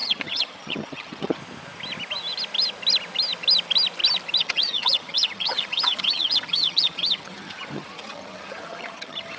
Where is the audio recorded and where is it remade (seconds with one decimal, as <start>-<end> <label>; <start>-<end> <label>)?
0.0-1.4 remade; 1.4-4.4 recorded; 4.4-9.4 remade